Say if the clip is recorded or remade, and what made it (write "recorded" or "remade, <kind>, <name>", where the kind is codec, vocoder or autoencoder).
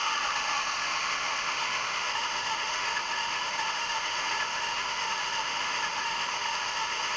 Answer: remade, autoencoder, DAC-VAE